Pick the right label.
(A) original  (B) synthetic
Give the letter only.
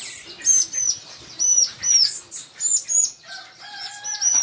A